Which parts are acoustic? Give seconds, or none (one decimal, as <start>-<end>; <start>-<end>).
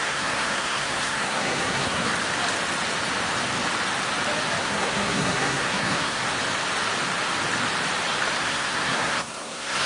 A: 2.1-4.6; 6.2-8.4